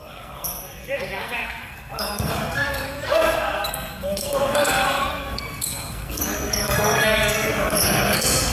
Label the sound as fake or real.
fake